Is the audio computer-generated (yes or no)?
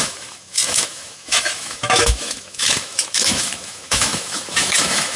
yes